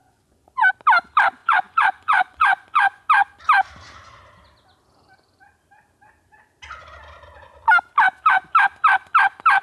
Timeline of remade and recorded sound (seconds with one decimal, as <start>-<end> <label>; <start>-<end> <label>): 0.0-0.7 remade; 0.7-1.4 recorded; 1.4-3.1 remade; 3.1-9.6 recorded